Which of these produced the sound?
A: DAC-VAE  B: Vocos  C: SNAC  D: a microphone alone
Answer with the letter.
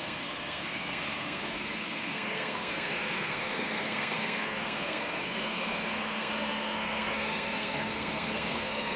C